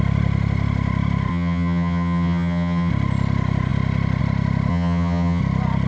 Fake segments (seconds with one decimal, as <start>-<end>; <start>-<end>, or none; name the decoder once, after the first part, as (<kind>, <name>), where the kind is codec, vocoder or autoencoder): 1.3-2.9 (vocoder, HiFi-GAN); 4.7-5.4